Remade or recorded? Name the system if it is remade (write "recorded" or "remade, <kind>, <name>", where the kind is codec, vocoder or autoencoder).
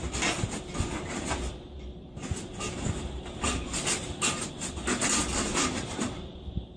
recorded